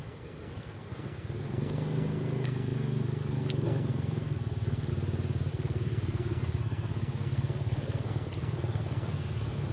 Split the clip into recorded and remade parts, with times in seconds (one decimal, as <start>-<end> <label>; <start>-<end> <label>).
0.0-4.9 remade; 4.9-5.5 recorded; 5.5-9.7 remade